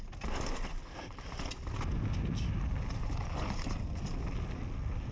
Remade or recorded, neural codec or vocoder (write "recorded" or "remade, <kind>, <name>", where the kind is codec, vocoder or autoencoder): recorded